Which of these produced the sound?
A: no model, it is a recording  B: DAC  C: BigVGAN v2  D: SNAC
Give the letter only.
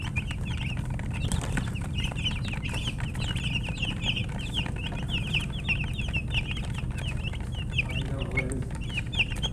A